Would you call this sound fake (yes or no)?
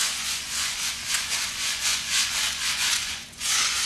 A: yes